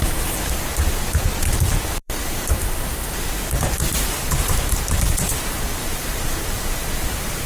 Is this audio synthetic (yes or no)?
yes